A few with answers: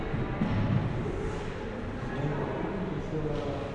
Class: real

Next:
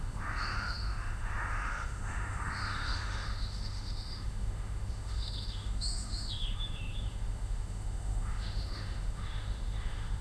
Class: fake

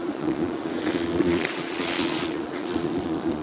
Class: fake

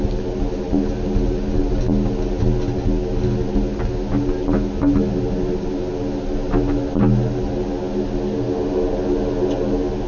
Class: real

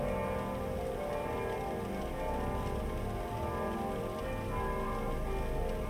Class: real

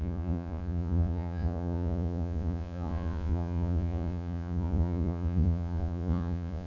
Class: fake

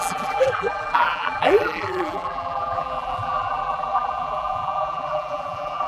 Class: fake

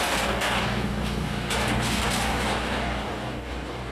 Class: fake